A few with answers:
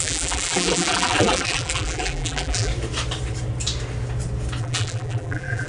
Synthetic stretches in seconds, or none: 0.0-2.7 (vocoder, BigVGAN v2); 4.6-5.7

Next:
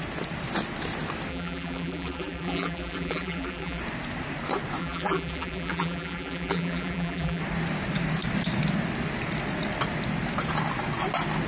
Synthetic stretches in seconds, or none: 1.3-3.8 (vocoder, BigVGAN v2); 4.8-7.4

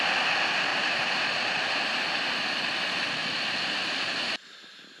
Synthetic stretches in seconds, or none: 0.7-2.6 (vocoder, BigVGAN v2); 3.2-4.2

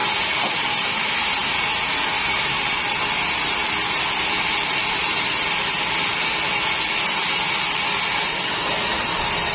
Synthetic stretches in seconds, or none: 0.6-1.4 (vocoder, BigVGAN v2); 2.4-7.2; 7.7-9.5

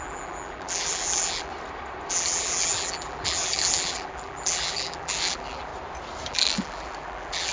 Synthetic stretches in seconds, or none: 0.0-1.5 (vocoder, BigVGAN v2); 2.1-5.7; 6.3-7.5

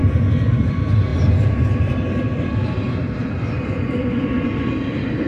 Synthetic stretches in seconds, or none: 0.7-5.3 (vocoder, BigVGAN v2)

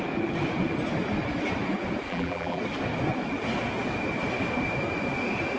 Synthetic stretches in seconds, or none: 2.1-2.6 (vocoder, BigVGAN v2)

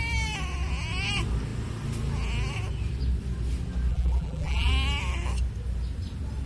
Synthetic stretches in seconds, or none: 3.9-4.7 (vocoder, BigVGAN v2)